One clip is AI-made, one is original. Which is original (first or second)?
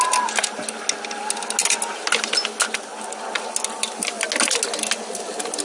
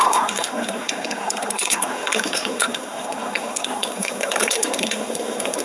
first